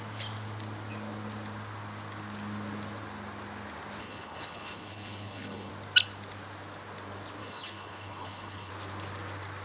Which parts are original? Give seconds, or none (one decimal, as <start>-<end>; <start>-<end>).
0.0-4.0; 5.7-7.4; 8.7-9.6